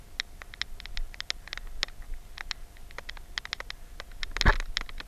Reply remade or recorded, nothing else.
recorded